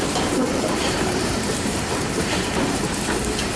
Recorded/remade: remade